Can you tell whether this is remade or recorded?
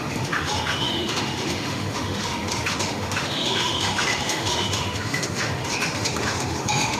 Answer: remade